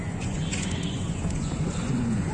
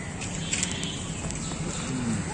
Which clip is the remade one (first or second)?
first